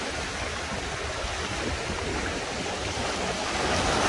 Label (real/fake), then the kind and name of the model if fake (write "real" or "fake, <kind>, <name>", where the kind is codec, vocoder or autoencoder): real